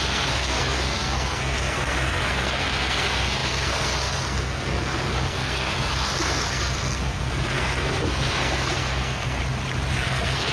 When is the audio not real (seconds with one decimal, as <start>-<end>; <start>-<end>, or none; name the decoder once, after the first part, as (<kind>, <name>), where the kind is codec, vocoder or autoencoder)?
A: 0.0-9.4 (codec, SNAC); 9.9-10.5